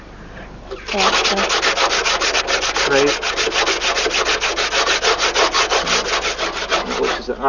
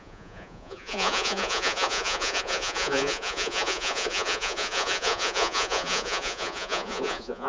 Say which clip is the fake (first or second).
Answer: second